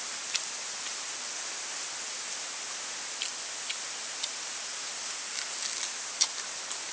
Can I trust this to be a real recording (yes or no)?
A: yes